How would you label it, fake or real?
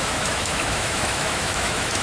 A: fake